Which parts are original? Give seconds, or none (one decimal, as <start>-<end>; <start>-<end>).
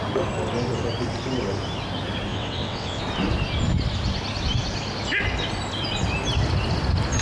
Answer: 0.0-2.3; 3.0-7.2